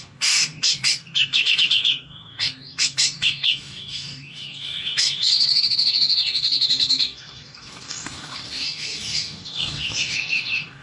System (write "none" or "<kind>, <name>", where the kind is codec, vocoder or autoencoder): codec, DAC